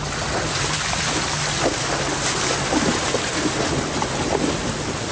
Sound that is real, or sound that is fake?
real